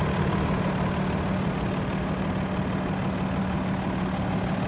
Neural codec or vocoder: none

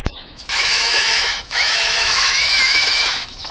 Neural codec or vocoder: autoencoder, DAC-VAE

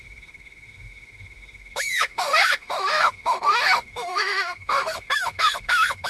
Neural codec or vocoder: autoencoder, DAC-VAE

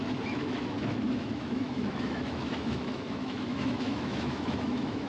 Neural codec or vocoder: autoencoder, DAC-VAE